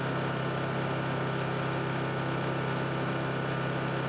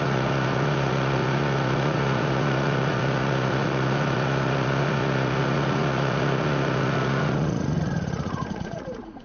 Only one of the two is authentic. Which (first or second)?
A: first